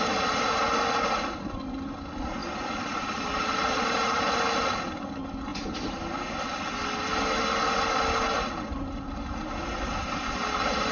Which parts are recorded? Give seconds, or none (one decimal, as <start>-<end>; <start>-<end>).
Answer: 0.0-2.4; 4.3-10.9